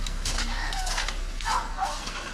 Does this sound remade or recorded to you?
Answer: remade